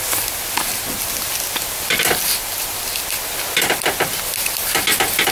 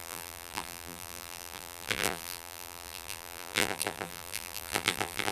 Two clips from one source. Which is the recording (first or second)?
first